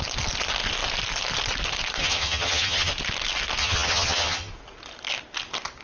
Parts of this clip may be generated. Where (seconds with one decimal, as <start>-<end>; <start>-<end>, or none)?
2.0-2.9; 3.6-4.5